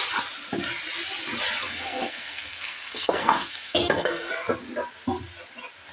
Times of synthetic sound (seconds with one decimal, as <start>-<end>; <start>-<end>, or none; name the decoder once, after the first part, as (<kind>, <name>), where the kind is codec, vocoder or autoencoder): 1.6-4.3 (codec, SNAC)